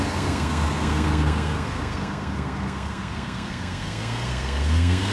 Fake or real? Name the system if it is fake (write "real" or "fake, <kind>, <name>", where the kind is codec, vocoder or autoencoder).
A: fake, codec, SNAC